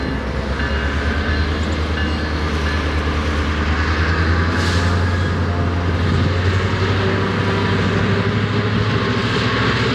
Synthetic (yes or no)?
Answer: no